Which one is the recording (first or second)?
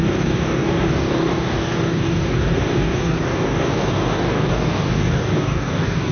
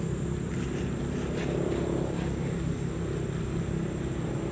second